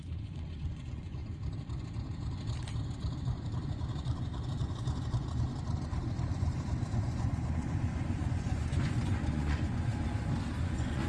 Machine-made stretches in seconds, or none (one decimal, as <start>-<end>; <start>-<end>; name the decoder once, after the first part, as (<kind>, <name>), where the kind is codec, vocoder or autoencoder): 0.0-1.2 (vocoder, Vocos); 3.2-5.5; 6.3-9.9; 10.6-11.1